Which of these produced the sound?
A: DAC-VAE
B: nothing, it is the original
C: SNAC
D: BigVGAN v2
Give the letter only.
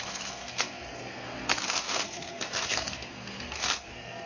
C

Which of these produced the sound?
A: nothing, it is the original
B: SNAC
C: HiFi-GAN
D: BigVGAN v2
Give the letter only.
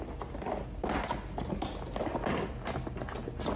A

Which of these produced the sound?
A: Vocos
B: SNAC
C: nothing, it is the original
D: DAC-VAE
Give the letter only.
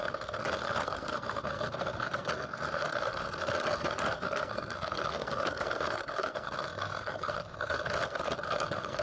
B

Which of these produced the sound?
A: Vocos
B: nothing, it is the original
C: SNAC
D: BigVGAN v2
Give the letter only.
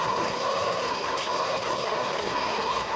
C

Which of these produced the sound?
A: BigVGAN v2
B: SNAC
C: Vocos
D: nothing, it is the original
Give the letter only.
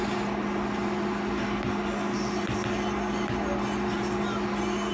D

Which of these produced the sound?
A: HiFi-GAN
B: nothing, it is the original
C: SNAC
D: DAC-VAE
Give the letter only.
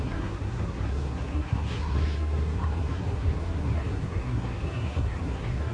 C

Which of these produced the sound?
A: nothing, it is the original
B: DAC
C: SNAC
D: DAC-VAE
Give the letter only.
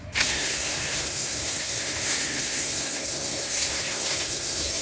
C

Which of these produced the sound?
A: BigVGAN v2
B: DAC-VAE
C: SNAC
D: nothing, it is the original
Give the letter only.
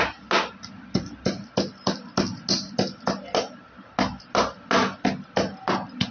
D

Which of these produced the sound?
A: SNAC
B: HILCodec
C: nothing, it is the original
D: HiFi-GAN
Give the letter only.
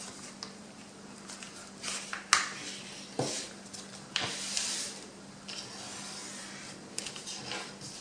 C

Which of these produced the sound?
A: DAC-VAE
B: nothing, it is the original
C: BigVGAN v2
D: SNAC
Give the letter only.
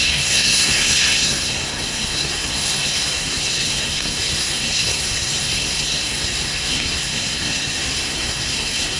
D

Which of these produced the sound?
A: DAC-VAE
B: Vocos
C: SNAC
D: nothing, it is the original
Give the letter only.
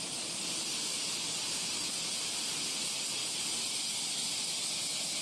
D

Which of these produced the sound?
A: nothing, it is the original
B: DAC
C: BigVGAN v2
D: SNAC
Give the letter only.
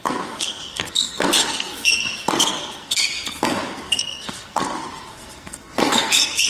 D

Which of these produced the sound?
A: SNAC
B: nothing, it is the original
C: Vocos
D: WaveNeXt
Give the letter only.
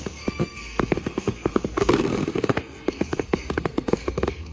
A